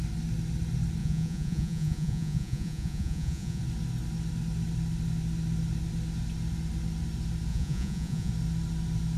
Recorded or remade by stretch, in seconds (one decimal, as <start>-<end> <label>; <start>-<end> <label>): 0.0-1.0 recorded; 1.0-3.6 remade; 3.6-7.5 recorded; 7.5-8.3 remade; 8.3-9.2 recorded